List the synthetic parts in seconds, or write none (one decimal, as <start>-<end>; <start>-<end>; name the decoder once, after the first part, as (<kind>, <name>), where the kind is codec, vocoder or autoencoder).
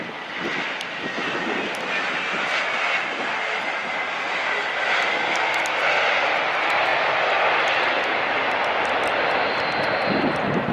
0.5-1.1 (vocoder, BigVGAN v2)